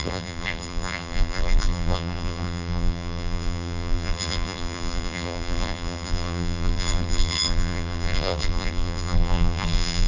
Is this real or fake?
fake